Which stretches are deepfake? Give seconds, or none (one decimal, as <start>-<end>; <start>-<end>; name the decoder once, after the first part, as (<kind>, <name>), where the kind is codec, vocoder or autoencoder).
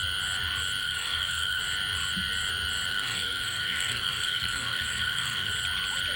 0.8-1.6 (codec, SNAC); 2.9-5.5